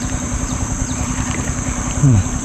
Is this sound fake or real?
fake